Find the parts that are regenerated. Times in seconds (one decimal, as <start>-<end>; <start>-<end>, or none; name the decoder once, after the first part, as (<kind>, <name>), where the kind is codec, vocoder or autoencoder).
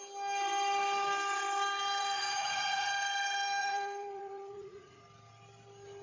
2.0-2.9 (vocoder, Vocos); 3.6-5.0